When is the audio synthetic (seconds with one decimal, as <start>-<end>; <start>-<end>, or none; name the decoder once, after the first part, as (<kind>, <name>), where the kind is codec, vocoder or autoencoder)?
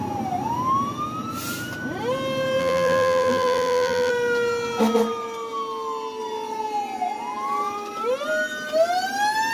2.6-4.1 (vocoder, BigVGAN v2)